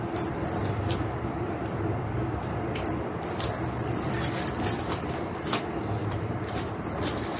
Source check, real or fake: fake